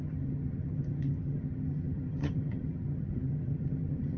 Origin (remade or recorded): remade